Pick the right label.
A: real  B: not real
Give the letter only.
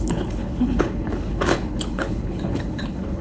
B